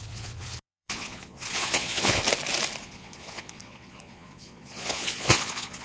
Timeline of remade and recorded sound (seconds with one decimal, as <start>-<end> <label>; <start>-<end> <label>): 0.0-2.2 remade; 2.2-2.8 recorded; 2.8-5.8 remade